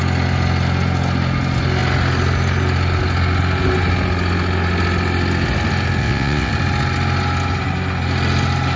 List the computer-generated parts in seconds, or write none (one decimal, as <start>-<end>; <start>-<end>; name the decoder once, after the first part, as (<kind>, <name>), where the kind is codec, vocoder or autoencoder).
6.0-6.5 (vocoder, WaveNeXt)